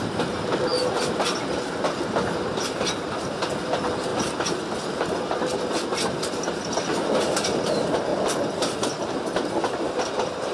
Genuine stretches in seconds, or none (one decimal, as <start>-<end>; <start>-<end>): 0.0-10.5